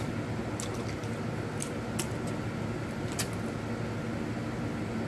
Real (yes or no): yes